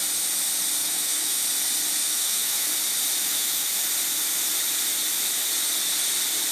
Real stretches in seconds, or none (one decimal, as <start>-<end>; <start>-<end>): 0.0-0.8; 1.4-2.0; 2.7-3.2; 3.7-6.5